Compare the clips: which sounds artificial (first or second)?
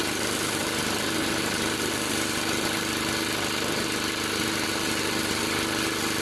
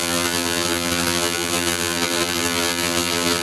second